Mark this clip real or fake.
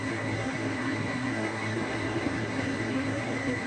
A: fake